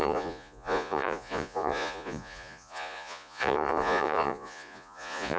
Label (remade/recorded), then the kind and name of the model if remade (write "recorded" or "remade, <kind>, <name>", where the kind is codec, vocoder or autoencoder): remade, vocoder, Vocos